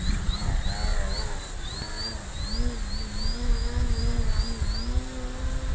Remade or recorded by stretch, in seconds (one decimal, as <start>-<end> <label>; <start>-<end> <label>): 0.0-3.4 recorded; 3.4-4.0 remade; 4.0-5.7 recorded